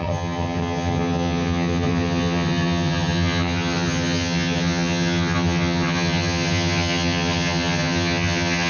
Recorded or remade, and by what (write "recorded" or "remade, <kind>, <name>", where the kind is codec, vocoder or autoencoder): remade, vocoder, HiFi-GAN